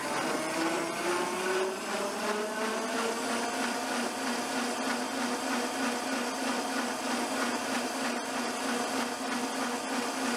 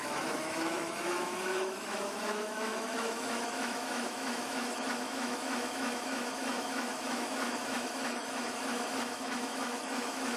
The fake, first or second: second